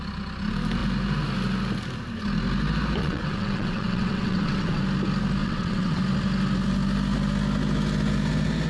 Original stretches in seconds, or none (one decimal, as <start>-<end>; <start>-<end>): 0.0-3.0; 4.8-5.4; 6.0-8.7